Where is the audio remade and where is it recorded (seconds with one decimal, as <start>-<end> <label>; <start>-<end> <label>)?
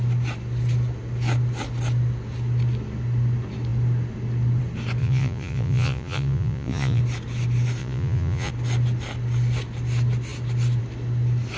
0.0-5.0 recorded; 5.0-7.0 remade; 7.0-7.8 recorded; 7.8-8.5 remade; 8.5-11.6 recorded